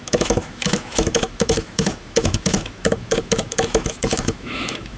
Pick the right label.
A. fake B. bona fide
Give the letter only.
A